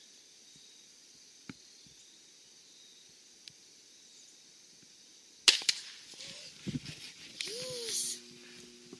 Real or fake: real